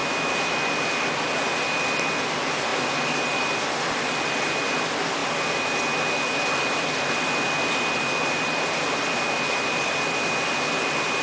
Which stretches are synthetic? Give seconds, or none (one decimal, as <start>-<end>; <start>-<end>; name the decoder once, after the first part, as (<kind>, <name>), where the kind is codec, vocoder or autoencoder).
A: 0.0-0.6 (autoencoder, DAC-VAE)